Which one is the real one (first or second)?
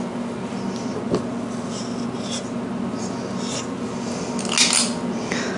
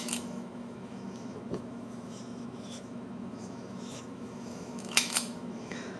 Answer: first